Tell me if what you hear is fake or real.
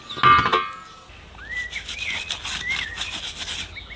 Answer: real